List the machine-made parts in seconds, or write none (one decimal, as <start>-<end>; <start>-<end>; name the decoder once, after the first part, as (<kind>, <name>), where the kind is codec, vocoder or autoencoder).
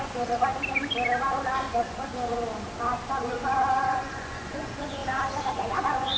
0.0-0.5 (vocoder, Vocos); 1.7-2.1; 3.2-5.0; 5.5-6.2